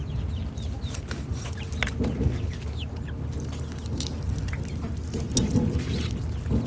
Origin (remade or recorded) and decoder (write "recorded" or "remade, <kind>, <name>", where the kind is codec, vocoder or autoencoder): recorded